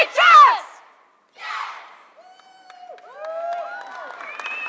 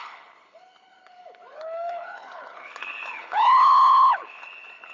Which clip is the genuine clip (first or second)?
first